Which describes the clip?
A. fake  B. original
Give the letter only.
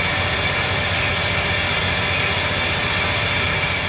B